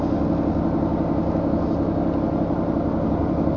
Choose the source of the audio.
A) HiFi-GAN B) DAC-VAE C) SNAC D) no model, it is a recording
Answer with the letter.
D